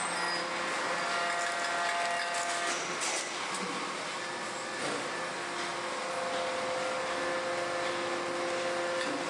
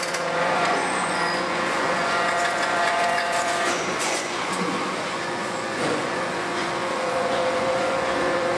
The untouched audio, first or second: first